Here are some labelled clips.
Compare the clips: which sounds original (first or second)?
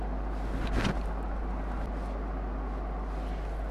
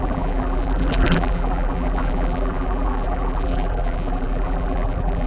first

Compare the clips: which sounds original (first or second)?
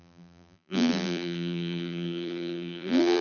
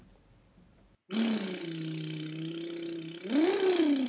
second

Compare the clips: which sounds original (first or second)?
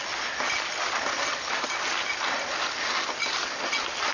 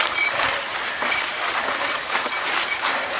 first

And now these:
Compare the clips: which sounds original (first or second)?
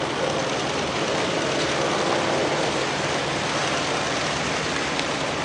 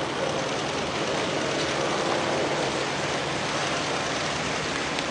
second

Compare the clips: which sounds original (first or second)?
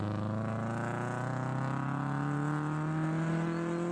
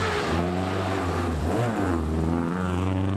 first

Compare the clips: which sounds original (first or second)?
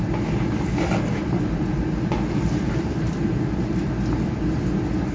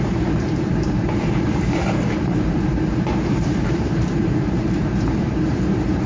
first